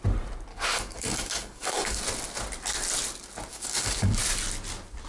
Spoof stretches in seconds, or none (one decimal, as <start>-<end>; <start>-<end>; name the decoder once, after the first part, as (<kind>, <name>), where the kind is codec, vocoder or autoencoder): 0.5-2.0 (codec, DAC); 3.5-4.1